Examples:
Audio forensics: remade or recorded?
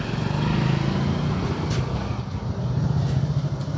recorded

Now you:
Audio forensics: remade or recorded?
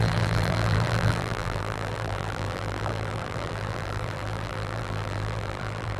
remade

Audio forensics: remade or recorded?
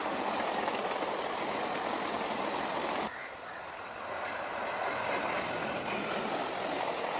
recorded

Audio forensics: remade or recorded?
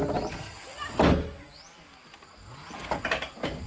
recorded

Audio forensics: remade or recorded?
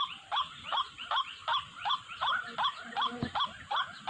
remade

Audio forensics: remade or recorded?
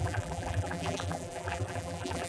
remade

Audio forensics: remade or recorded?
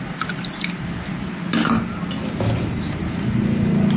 recorded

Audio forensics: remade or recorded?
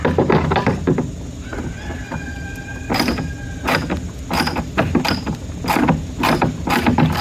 recorded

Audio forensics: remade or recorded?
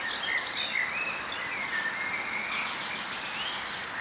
recorded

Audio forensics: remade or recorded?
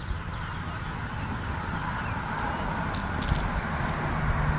recorded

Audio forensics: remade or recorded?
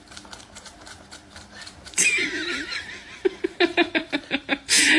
remade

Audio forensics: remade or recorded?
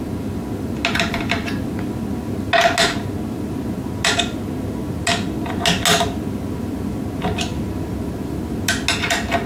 recorded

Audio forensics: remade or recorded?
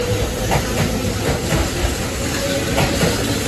recorded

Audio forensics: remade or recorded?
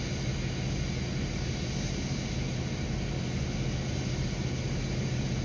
recorded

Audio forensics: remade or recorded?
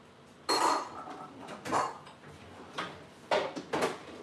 recorded